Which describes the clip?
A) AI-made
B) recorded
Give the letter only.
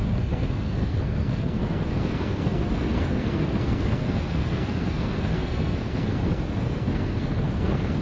A